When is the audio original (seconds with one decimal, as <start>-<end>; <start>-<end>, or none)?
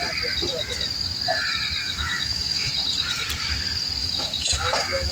0.0-1.8; 2.7-4.0